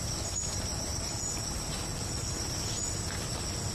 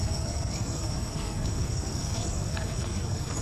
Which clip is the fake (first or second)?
second